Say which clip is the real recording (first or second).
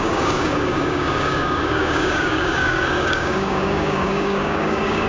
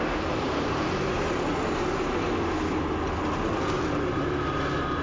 second